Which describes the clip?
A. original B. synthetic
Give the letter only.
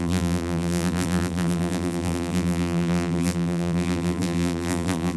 B